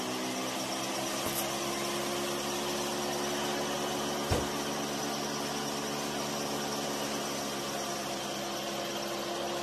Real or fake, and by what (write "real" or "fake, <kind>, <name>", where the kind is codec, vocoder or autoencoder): real